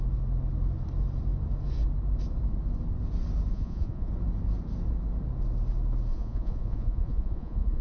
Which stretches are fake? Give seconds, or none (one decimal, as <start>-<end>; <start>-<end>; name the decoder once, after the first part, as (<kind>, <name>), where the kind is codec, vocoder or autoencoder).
3.5-4.1 (vocoder, Vocos); 6.1-7.8